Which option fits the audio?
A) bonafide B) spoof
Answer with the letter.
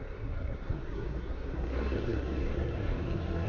B